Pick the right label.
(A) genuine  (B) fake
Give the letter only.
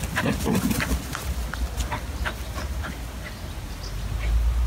A